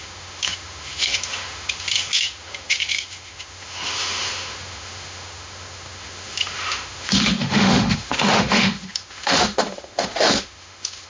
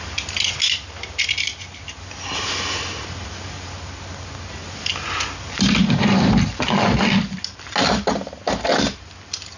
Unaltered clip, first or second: second